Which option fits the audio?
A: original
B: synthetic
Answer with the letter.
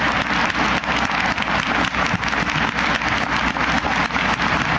A